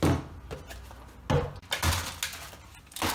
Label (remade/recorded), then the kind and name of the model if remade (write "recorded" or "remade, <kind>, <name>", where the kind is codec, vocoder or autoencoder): recorded